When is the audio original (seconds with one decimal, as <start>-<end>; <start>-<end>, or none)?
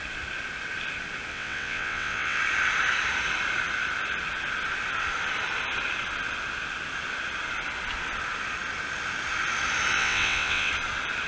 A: 0.0-1.3; 2.4-9.9; 10.7-11.3